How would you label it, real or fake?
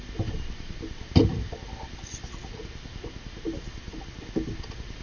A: real